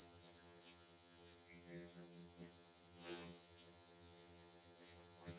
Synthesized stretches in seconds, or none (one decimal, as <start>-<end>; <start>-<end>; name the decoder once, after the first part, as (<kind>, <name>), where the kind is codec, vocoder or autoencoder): 0.0-5.4 (vocoder, HiFi-GAN)